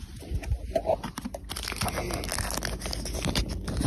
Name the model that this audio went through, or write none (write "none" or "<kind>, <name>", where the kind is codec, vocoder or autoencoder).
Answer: none